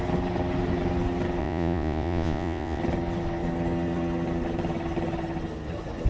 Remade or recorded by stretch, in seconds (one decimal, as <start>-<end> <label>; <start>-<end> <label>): 0.0-1.4 recorded; 1.4-2.8 remade; 2.8-6.1 recorded